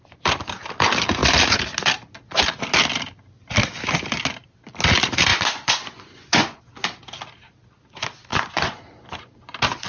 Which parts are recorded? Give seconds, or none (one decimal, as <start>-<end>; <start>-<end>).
0.0-5.3; 6.6-8.3; 8.8-9.9

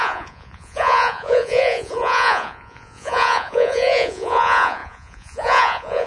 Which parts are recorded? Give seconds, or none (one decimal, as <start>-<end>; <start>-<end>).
none